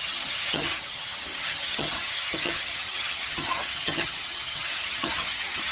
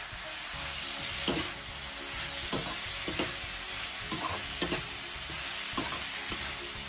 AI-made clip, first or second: first